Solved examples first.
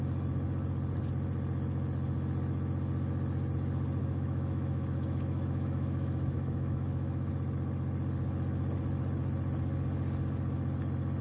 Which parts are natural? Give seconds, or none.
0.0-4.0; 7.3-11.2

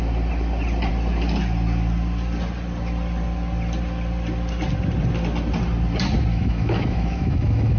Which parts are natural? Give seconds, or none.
0.0-6.3

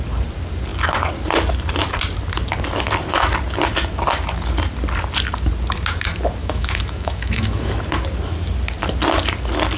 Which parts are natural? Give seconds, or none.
0.0-6.4; 7.7-9.8

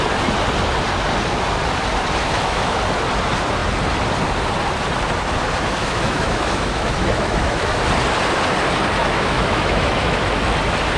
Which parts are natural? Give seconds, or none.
0.0-2.2; 2.8-5.8; 7.8-9.0; 10.2-11.0